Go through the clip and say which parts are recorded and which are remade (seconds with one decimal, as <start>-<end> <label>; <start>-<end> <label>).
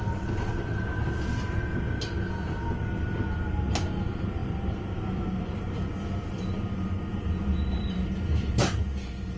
0.0-4.4 recorded; 4.4-5.6 remade; 5.6-7.1 recorded; 7.1-8.6 remade; 8.6-9.4 recorded